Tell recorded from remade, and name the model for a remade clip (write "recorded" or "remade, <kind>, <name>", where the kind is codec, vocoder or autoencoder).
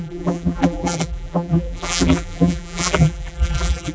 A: remade, vocoder, BigVGAN v2